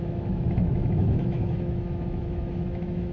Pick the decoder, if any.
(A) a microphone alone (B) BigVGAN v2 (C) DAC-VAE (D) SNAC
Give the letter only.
C